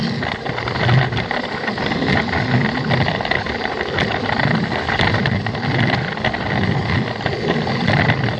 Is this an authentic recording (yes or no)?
yes